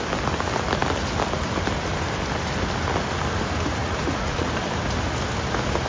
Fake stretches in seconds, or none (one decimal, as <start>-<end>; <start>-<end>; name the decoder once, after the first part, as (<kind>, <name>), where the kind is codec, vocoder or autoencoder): 3.8-4.5 (vocoder, Vocos)